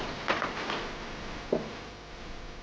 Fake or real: real